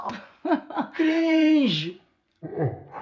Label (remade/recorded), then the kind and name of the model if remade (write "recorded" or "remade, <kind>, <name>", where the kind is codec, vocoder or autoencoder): remade, vocoder, Vocos